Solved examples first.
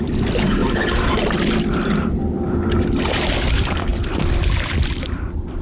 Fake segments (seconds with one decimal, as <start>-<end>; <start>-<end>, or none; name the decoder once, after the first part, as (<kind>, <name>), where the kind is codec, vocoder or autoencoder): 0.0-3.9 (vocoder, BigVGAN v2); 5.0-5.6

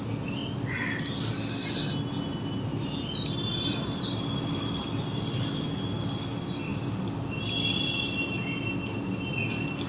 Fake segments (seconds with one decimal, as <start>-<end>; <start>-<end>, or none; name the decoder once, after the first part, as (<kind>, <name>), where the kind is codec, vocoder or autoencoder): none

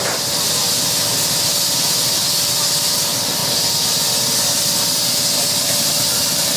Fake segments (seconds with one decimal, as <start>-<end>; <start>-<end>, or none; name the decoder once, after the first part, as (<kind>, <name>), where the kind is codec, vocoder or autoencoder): 0.0-0.6 (vocoder, BigVGAN v2); 2.9-3.4; 5.6-6.6

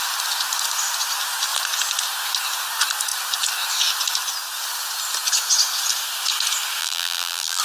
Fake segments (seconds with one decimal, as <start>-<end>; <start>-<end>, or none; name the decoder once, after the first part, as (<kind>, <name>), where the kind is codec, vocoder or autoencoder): 6.8-7.6 (vocoder, BigVGAN v2)

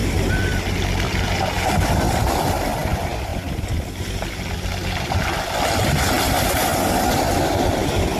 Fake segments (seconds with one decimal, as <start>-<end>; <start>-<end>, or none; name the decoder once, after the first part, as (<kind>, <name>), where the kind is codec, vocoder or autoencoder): none